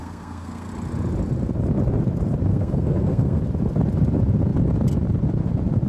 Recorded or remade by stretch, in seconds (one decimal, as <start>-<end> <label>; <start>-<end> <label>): 0.0-0.7 remade; 0.7-2.5 recorded; 2.5-3.4 remade; 3.4-5.9 recorded